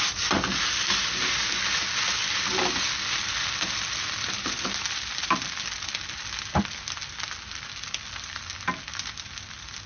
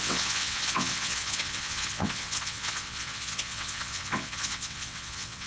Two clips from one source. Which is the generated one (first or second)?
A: second